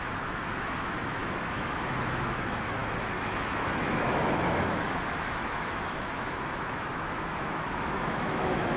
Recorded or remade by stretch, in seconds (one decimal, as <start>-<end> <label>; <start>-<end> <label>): 0.0-8.8 remade